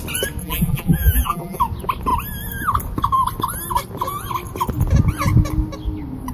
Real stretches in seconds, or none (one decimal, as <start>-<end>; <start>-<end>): 0.0-0.4; 1.6-6.3